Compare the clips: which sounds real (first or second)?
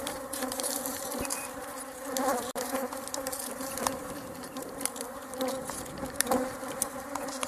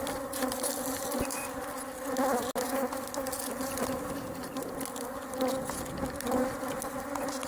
second